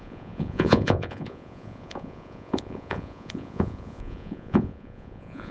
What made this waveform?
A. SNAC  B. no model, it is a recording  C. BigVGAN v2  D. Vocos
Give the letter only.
D